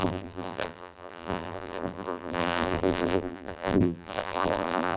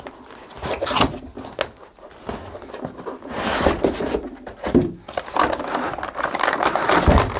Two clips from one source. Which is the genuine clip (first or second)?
second